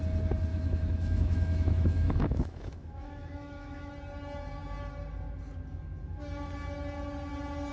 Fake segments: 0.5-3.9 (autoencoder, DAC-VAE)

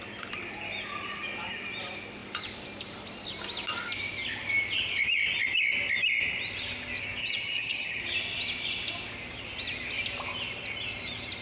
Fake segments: 7.2-8.0 (vocoder, HiFi-GAN)

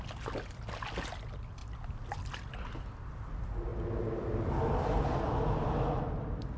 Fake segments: none

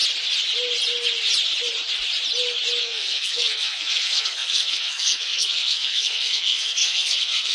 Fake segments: 2.8-7.5 (codec, SNAC)